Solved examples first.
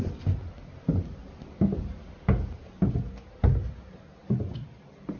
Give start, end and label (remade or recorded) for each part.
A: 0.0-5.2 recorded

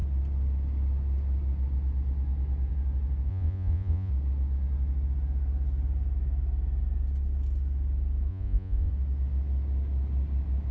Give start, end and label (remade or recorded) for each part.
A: 0.0-3.3 recorded; 3.3-4.1 remade; 4.1-8.3 recorded; 8.3-8.9 remade; 8.9-10.7 recorded

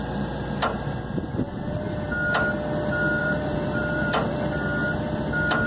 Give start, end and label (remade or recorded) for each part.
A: 0.0-3.2 recorded; 3.2-4.5 remade; 4.5-5.7 recorded

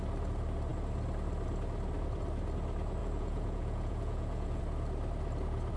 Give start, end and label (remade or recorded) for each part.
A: 0.0-3.0 recorded; 3.0-4.6 remade; 4.6-5.8 recorded

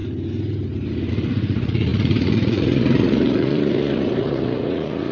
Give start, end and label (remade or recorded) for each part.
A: 0.0-1.1 recorded; 1.1-5.1 remade

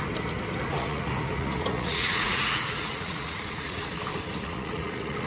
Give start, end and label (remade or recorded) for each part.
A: 0.0-0.7 recorded; 0.7-3.9 remade; 3.9-4.3 recorded; 4.3-5.3 remade

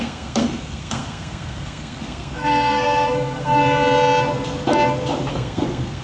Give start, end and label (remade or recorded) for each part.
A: 0.0-3.6 remade; 3.6-5.3 recorded; 5.3-6.0 remade